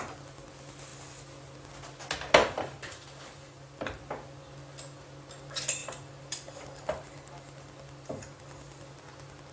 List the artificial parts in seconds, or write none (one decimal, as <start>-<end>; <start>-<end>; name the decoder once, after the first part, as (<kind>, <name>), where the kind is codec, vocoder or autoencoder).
2.4-4.0 (vocoder, BigVGAN v2); 5.8-8.9

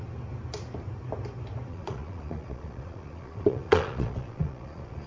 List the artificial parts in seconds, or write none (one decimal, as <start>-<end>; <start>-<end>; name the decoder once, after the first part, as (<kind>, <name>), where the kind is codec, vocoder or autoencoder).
1.7-5.1 (vocoder, Vocos)

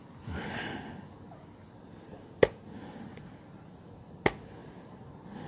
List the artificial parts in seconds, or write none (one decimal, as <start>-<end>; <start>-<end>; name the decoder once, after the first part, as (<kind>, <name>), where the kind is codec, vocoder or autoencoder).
none

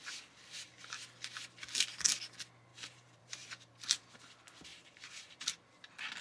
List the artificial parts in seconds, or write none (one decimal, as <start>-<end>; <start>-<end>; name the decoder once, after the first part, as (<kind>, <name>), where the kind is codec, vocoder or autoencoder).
2.7-4.0 (vocoder, BigVGAN v2); 4.7-5.3

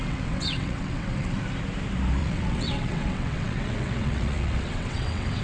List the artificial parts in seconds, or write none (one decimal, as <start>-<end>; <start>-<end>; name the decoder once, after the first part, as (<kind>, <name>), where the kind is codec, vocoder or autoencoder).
0.0-1.4 (vocoder, WaveNeXt); 2.2-5.4